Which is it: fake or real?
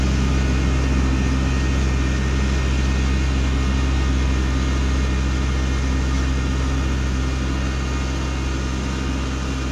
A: real